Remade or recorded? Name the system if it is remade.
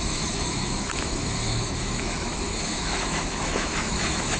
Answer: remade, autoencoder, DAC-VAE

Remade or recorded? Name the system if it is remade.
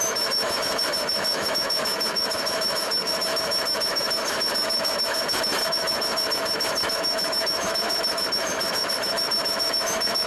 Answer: remade, autoencoder, DAC-VAE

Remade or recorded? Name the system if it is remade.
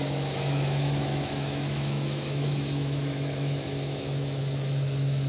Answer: remade, autoencoder, DAC-VAE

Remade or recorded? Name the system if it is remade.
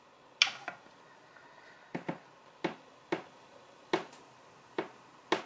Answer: recorded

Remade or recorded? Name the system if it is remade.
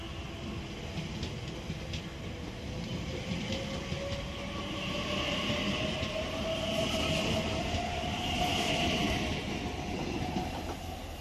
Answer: recorded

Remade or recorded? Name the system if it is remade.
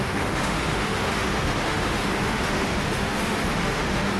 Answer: remade, autoencoder, DAC-VAE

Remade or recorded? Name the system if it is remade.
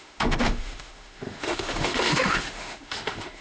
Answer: remade, autoencoder, DAC-VAE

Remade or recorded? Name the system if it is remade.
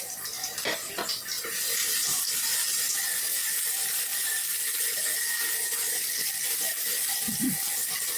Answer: recorded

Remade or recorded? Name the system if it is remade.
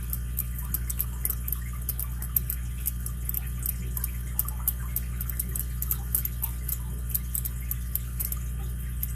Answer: recorded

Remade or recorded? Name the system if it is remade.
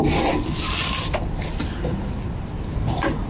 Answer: recorded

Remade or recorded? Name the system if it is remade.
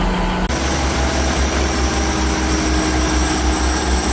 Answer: recorded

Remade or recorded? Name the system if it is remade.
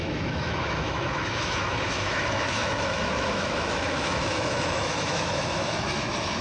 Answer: remade, autoencoder, DAC-VAE